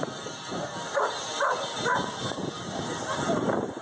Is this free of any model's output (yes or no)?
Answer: no